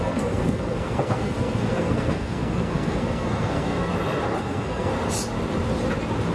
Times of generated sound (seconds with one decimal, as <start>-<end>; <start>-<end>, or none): 0.0-3.9; 4.4-4.9